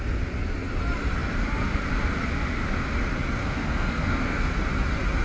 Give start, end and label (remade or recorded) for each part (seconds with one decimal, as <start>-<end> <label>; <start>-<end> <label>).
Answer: 0.0-3.4 recorded; 3.4-4.5 remade; 4.5-5.2 recorded